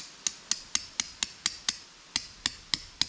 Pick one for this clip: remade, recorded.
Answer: recorded